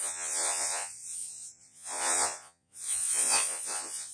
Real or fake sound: fake